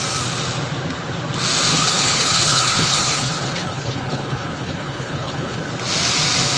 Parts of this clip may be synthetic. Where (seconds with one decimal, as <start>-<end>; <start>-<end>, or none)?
1.7-5.7